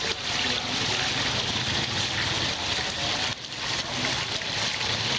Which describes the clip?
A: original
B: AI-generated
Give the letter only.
A